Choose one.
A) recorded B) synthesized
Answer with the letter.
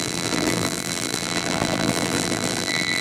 B